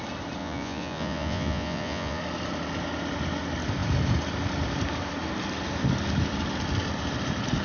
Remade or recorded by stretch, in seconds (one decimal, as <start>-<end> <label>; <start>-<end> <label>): 0.0-0.4 recorded; 0.4-2.2 remade; 2.2-7.6 recorded